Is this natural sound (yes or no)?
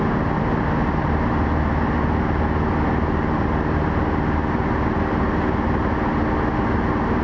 yes